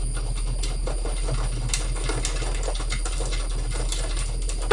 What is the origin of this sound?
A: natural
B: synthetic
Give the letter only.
A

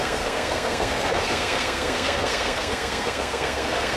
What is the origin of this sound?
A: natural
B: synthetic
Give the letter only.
B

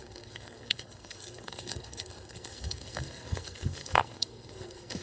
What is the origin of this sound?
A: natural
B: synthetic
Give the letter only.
B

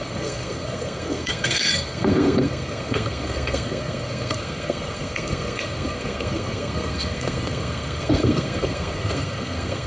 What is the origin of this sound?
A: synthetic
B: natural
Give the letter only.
A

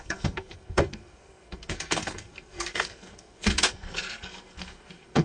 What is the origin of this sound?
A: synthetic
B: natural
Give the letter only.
A